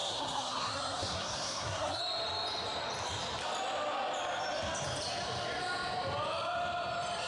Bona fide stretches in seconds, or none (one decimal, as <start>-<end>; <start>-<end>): 2.0-7.3